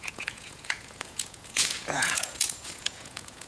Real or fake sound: fake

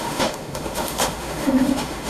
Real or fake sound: fake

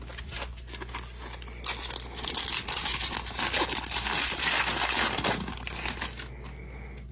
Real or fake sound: real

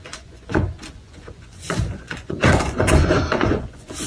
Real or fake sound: fake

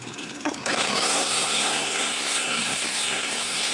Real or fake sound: fake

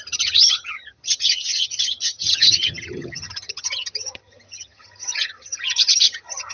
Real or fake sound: fake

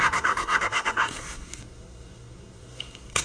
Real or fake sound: fake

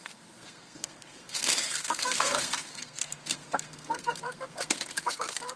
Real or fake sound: fake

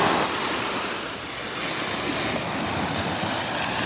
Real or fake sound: real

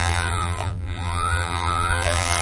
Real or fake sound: fake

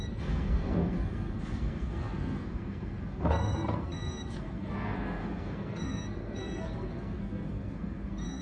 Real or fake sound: fake